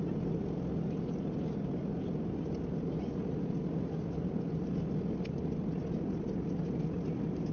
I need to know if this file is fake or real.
real